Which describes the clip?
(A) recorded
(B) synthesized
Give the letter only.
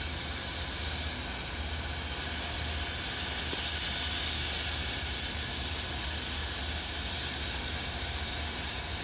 A